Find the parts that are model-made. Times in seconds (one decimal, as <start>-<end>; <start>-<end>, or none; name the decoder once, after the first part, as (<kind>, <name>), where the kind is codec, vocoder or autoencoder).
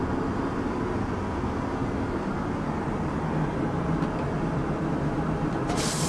none